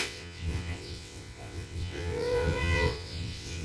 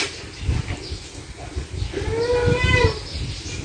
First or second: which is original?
second